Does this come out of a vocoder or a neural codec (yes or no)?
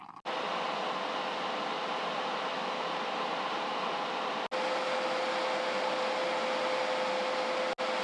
no